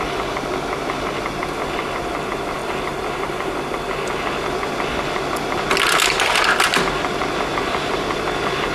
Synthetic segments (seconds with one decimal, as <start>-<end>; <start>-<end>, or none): none